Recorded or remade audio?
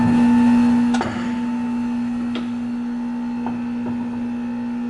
recorded